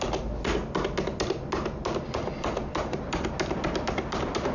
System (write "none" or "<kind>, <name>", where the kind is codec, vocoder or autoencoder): none